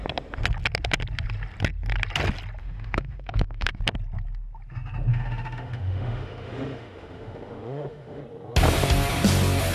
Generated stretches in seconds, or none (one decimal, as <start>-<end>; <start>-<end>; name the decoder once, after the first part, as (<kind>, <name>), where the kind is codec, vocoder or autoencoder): 2.6-3.7 (autoencoder, DAC-VAE); 5.1-8.2